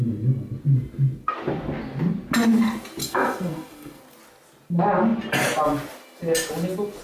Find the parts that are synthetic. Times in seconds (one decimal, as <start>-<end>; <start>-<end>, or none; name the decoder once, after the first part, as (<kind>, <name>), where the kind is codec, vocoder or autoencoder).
3.0-4.0 (codec, SNAC)